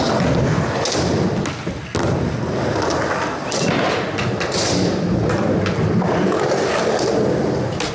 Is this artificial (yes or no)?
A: no